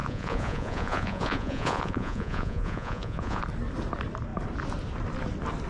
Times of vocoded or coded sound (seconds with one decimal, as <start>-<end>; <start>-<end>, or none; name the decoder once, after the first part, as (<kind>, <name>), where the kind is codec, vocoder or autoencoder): 0.0-3.4 (vocoder, Vocos)